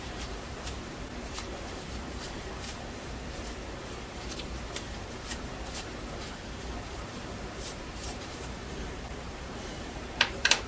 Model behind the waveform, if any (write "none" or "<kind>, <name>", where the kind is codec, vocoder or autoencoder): vocoder, BigVGAN v2